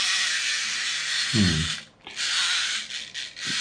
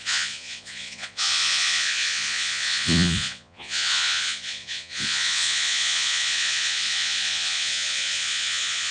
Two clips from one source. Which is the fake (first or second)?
second